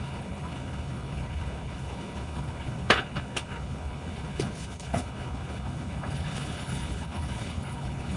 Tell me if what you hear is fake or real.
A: fake